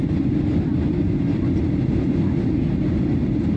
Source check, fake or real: real